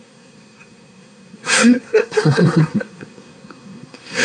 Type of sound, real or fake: fake